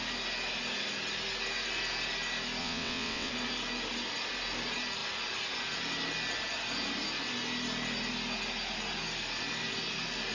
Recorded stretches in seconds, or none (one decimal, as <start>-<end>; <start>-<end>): 0.0-2.6; 3.3-10.3